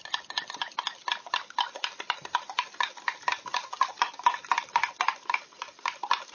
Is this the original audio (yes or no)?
yes